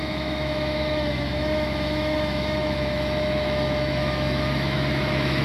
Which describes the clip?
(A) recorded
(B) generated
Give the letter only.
B